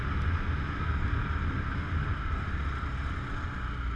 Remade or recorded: recorded